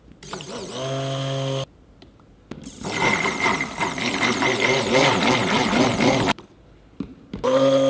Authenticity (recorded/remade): recorded